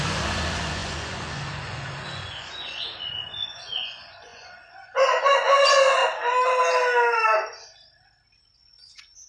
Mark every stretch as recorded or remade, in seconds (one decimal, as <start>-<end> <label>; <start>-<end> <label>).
0.0-6.0 remade; 6.0-8.6 recorded; 8.6-9.3 remade